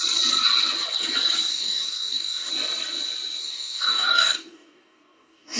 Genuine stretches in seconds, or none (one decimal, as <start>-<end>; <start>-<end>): 0.0-1.5; 2.5-3.4